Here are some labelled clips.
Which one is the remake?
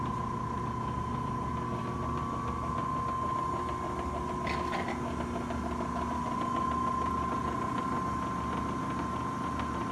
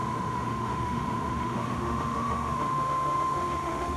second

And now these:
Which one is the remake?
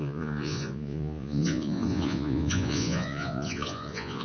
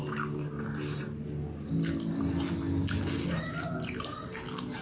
first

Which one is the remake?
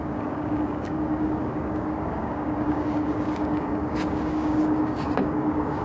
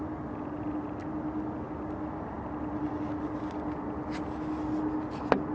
first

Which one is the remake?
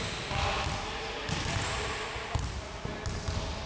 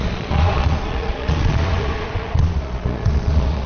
second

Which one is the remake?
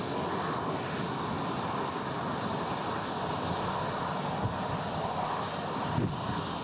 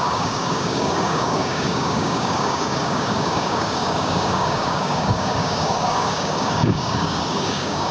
second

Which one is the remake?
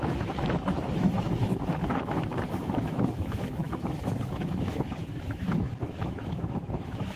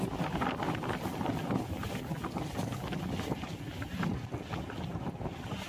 first